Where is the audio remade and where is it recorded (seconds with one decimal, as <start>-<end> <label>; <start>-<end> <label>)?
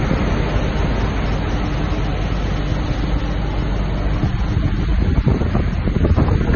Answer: 0.0-4.9 recorded; 4.9-6.6 remade